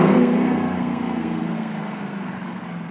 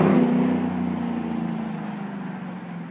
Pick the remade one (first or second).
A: first